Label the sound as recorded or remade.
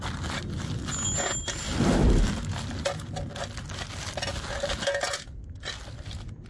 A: recorded